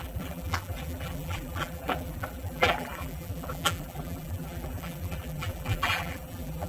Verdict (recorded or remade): remade